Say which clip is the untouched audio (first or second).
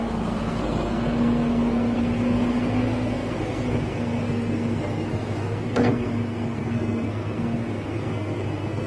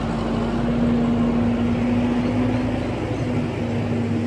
second